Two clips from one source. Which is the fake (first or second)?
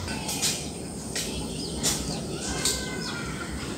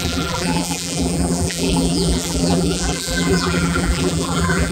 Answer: second